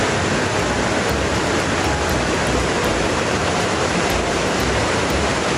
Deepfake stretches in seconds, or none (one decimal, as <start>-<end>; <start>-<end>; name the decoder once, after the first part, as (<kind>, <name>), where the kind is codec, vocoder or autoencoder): 2.9-5.6 (vocoder, BigVGAN v2)